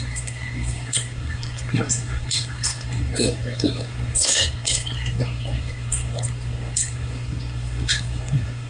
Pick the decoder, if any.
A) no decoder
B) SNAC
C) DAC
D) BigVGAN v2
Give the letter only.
B